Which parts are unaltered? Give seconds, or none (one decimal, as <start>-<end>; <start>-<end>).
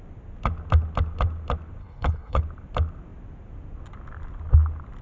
0.0-1.8; 2.4-5.0